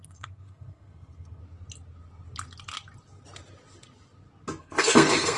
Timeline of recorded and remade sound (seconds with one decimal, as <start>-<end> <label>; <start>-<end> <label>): 0.0-1.4 remade; 1.4-4.6 recorded; 4.6-5.4 remade

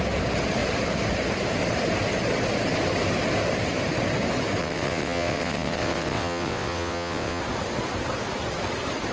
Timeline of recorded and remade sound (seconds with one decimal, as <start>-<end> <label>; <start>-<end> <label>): 0.0-4.6 recorded; 4.6-7.4 remade; 7.4-9.1 recorded

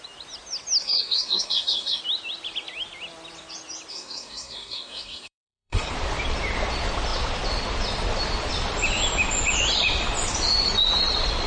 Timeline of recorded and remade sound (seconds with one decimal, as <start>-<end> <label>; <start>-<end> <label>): 0.0-0.8 recorded; 0.8-2.0 remade; 2.0-3.9 recorded; 3.9-5.9 remade; 5.9-11.5 recorded

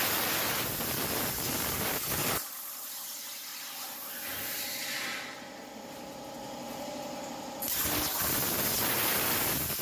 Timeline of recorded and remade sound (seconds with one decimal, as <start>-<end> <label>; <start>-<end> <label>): 0.0-9.8 recorded

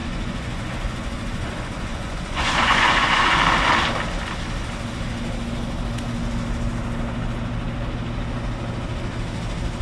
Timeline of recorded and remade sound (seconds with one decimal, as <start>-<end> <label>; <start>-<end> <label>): 0.0-3.4 remade; 3.4-9.8 recorded